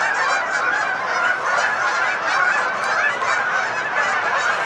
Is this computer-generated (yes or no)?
no